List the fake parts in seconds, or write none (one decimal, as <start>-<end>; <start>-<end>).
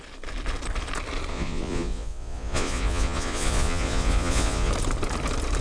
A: 1.3-4.7